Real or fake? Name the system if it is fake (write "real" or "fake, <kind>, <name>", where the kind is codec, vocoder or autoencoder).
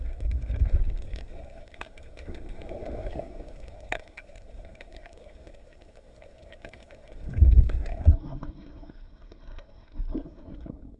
fake, codec, SNAC